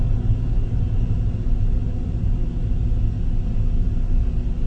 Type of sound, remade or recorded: recorded